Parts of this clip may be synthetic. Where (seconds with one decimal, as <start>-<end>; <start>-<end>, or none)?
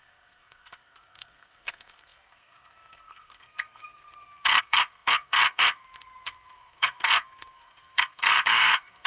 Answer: 0.0-9.1